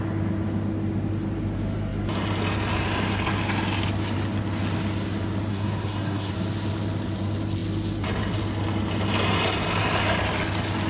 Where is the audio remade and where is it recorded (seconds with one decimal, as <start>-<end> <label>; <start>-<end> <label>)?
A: 0.0-5.5 recorded; 5.5-6.3 remade; 6.3-10.9 recorded